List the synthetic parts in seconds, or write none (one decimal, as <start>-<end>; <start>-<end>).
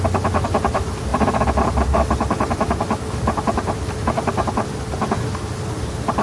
1.1-4.8